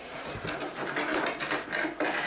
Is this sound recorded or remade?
recorded